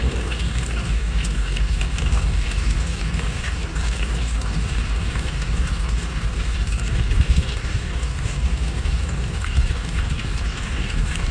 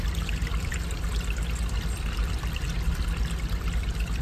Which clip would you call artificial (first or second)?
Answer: first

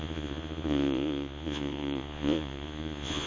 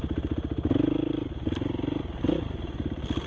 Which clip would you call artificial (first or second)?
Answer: first